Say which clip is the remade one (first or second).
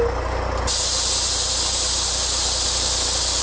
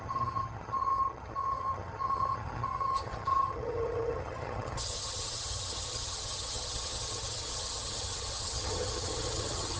second